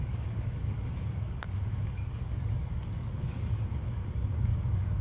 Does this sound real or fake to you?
fake